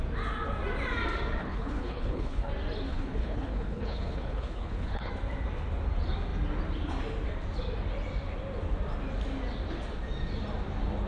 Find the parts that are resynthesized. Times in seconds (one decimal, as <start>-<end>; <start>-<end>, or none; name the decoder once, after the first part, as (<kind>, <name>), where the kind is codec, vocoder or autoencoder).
1.4-2.5 (codec, HILCodec); 2.9-5.1